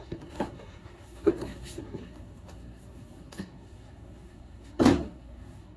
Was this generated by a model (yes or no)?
yes